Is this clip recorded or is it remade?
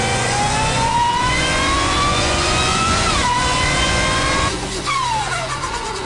remade